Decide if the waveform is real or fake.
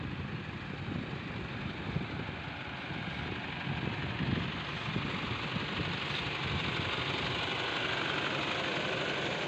real